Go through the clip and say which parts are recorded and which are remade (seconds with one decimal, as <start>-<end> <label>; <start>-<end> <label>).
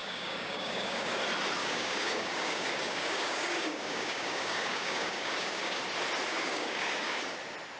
0.0-1.2 remade; 1.2-1.6 recorded; 1.6-5.8 remade; 5.8-6.3 recorded; 6.3-7.2 remade; 7.2-7.8 recorded